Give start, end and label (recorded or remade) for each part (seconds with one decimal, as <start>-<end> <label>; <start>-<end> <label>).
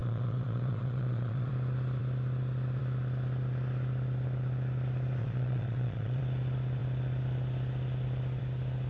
0.0-1.5 remade; 1.5-5.2 recorded; 5.2-6.2 remade; 6.2-8.9 recorded